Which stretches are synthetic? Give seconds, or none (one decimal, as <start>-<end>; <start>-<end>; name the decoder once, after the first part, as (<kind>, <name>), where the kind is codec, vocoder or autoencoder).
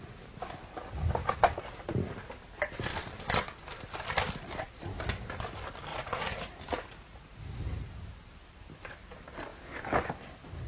5.9-7.4 (vocoder, Vocos)